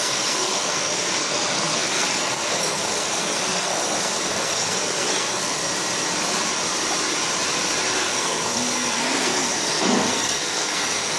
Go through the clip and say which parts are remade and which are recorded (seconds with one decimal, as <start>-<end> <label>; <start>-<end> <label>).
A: 0.0-5.6 remade; 5.6-8.0 recorded; 8.0-11.2 remade